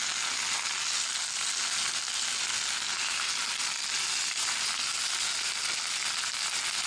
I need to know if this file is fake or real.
real